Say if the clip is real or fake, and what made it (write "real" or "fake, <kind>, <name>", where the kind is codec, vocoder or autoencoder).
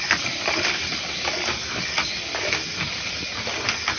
real